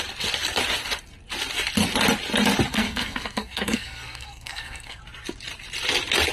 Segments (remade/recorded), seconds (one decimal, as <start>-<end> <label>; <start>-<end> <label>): 0.0-2.7 recorded; 2.7-5.0 remade; 5.0-6.3 recorded